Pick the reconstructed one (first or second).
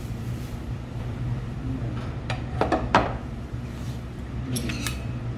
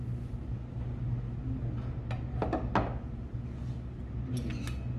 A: first